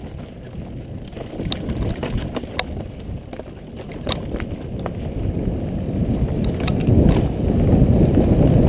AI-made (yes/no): no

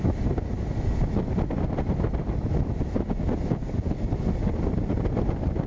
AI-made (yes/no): no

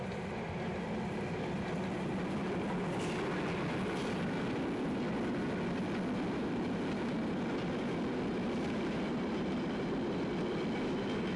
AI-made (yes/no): no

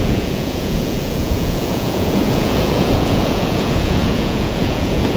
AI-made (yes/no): yes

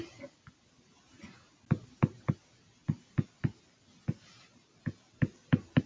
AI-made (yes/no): no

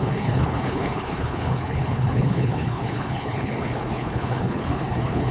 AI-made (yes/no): yes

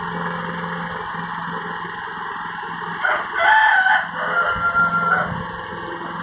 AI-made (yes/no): no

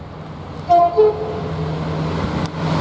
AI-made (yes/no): no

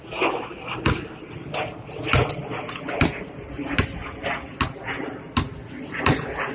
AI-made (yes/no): no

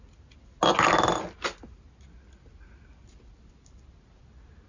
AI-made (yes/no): no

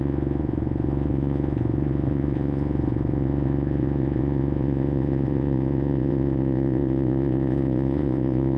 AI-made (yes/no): yes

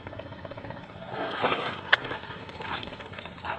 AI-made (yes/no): yes